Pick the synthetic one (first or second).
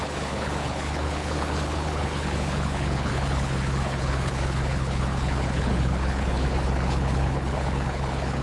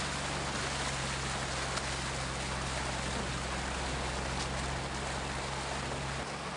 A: first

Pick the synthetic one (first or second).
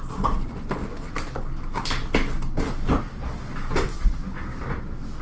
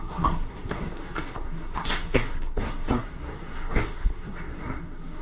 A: second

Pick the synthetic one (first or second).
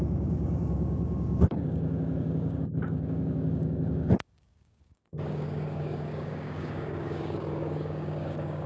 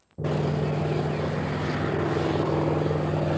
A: first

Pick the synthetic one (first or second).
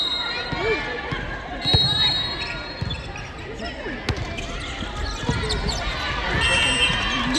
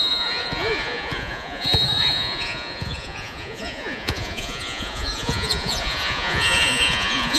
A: second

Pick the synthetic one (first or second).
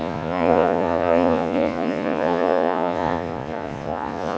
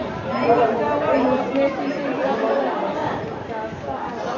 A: first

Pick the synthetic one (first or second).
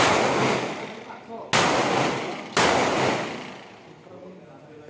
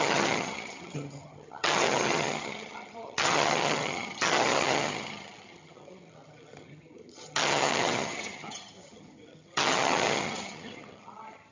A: second